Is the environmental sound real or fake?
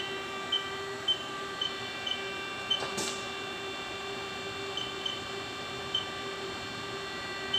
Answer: fake